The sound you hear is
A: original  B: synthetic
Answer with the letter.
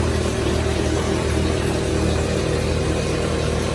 B